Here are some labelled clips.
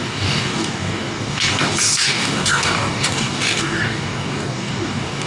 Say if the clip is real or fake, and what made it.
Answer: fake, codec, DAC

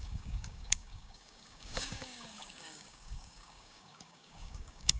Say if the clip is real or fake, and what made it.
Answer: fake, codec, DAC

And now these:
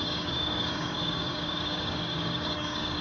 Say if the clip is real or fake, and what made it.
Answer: fake, codec, DAC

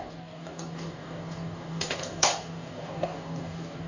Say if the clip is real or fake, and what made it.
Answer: fake, codec, DAC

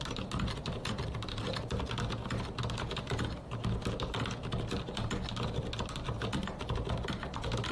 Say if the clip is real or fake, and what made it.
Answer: real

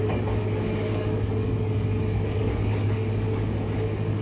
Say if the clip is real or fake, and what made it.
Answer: fake, codec, DAC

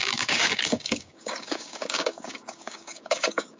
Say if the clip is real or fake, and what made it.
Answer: fake, codec, DAC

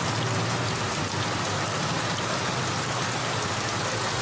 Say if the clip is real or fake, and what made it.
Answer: real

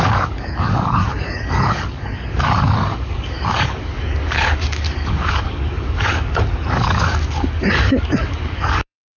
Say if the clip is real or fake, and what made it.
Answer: fake, codec, DAC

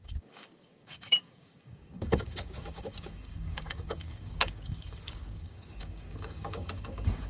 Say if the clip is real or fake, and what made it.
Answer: fake, codec, DAC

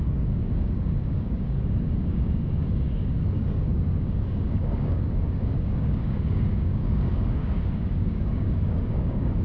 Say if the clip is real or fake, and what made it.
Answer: fake, codec, DAC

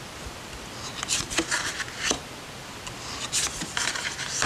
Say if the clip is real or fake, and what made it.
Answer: real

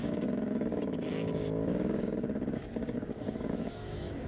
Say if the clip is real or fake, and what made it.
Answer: fake, codec, DAC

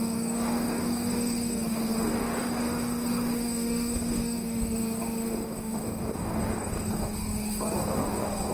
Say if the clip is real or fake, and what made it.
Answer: fake, codec, DAC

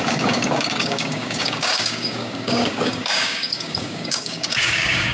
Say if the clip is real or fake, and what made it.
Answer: fake, codec, DAC